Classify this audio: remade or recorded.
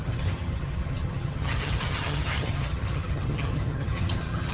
remade